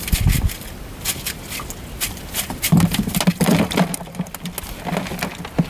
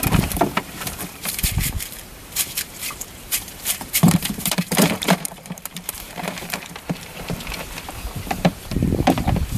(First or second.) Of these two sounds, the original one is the first